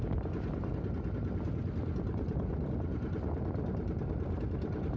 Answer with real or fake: real